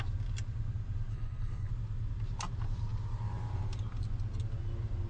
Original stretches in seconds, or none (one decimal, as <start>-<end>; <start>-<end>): 0.0-1.1; 1.7-5.1